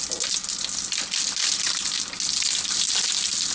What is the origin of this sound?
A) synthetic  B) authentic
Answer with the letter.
B